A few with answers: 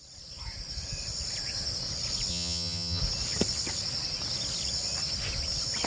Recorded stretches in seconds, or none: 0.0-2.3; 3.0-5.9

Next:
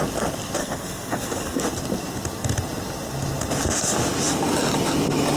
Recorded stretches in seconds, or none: 0.0-0.6; 1.6-5.4

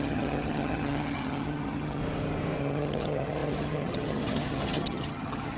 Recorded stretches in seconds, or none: 2.0-2.6

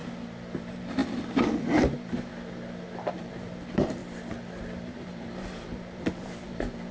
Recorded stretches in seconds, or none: 0.0-0.6; 1.0-1.6; 2.3-3.1; 4.0-4.6

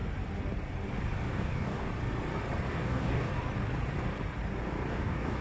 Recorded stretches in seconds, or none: 0.0-1.3; 1.9-2.7; 3.3-4.9

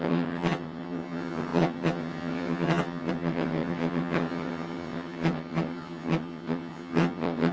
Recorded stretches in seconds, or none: none

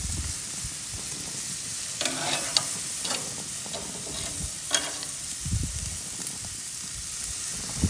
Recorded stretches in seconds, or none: 0.0-7.9

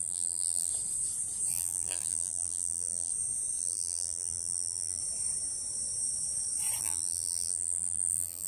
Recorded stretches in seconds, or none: 0.7-1.5; 3.1-3.6; 5.0-6.8